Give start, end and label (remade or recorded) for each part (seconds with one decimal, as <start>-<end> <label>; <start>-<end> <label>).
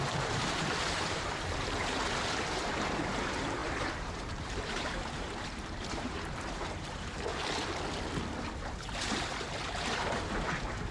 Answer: 0.0-7.3 remade; 7.3-8.5 recorded; 8.5-10.9 remade